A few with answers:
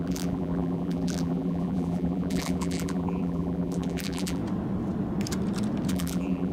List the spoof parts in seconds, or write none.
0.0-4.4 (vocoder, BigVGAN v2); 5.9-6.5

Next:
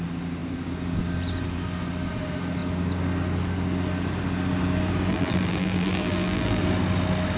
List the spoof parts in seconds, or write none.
5.1-6.6 (vocoder, BigVGAN v2)

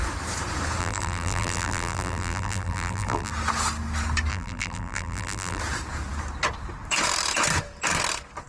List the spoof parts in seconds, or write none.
0.8-3.3 (vocoder, BigVGAN v2); 4.3-5.6

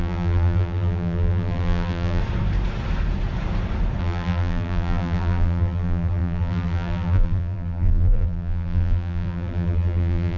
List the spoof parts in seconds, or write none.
0.0-2.2 (vocoder, BigVGAN v2); 4.0-10.4

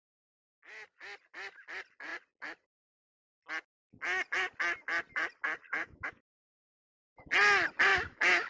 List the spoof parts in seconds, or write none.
5.8-7.3 (autoencoder, DAC-VAE); 7.9-8.5

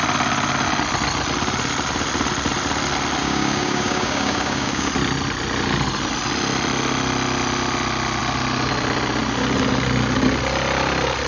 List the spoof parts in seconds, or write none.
3.2-4.9 (codec, DAC)